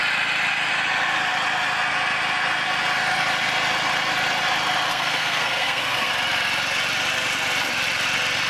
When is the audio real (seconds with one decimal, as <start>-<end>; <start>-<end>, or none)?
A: 0.0-4.9; 6.1-8.5